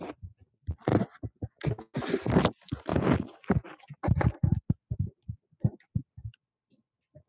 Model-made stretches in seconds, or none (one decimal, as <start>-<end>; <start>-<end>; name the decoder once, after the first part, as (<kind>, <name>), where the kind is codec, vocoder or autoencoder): 0.0-0.9 (vocoder, BigVGAN v2); 2.3-2.9; 4.2-7.3